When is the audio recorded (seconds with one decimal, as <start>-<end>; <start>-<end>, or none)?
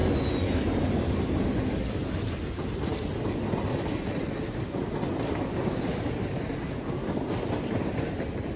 0.0-8.6